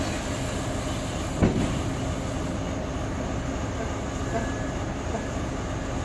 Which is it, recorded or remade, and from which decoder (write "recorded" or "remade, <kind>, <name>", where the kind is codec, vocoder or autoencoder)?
recorded